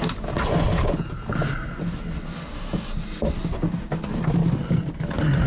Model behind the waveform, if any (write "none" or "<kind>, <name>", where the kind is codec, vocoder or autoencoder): none